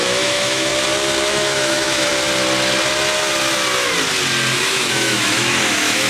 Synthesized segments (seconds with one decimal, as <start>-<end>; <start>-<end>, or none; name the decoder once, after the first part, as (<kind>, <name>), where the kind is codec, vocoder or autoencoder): 0.0-0.7 (autoencoder, DAC-VAE); 1.3-2.1; 4.6-6.1